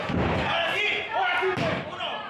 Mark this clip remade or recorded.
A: recorded